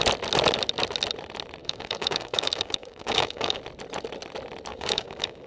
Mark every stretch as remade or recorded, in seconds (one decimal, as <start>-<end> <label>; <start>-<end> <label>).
0.0-1.6 recorded; 1.6-3.6 remade; 3.6-4.7 recorded; 4.7-5.5 remade